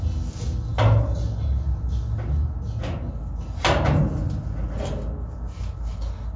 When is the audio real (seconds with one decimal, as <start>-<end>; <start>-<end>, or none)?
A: 0.0-6.4